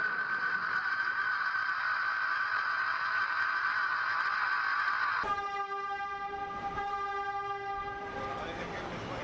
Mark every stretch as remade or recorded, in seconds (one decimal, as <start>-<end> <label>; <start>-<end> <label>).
0.0-0.6 recorded; 0.6-1.8 remade; 1.8-2.3 recorded; 2.3-4.5 remade; 4.5-9.2 recorded